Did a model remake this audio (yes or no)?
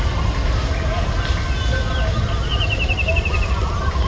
no